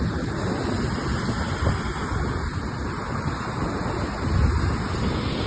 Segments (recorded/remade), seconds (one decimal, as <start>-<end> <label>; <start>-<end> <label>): 0.0-5.5 recorded